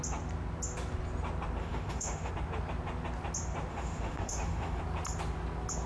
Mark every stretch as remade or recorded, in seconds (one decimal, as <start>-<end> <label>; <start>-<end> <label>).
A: 0.0-1.6 recorded; 1.6-2.3 remade; 2.3-3.7 recorded; 3.7-4.8 remade; 4.8-5.9 recorded

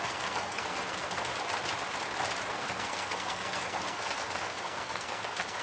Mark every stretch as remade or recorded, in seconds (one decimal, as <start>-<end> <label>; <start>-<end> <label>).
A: 0.0-1.3 remade; 1.3-2.5 recorded; 2.5-5.6 remade

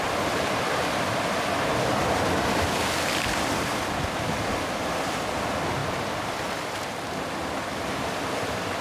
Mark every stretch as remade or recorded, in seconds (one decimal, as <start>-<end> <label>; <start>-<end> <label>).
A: 0.0-8.8 recorded

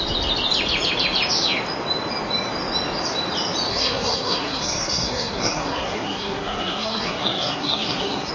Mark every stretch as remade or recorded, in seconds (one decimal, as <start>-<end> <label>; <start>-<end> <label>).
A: 0.0-3.7 recorded; 3.7-8.3 remade

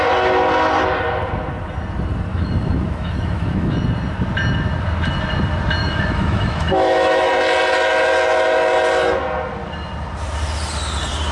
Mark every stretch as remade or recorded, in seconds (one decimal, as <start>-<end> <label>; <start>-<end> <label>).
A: 0.0-2.3 recorded; 2.3-3.8 remade; 3.8-5.8 recorded; 5.8-7.3 remade; 7.3-11.3 recorded